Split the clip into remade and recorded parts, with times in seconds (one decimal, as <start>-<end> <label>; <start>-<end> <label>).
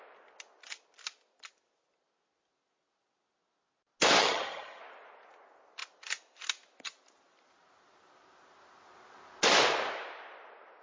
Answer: 0.0-4.2 recorded; 4.2-4.8 remade; 4.8-10.8 recorded